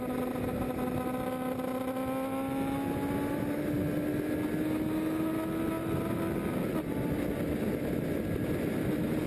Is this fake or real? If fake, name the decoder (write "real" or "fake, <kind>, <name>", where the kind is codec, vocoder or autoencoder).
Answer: real